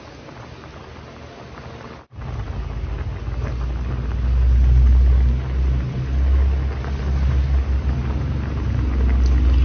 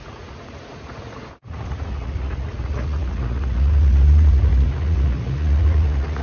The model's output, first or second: second